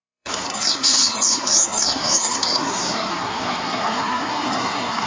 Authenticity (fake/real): fake